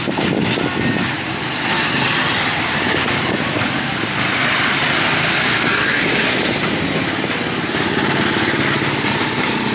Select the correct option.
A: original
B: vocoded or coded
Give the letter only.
A